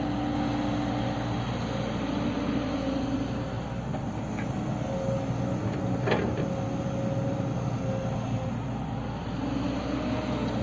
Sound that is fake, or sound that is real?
real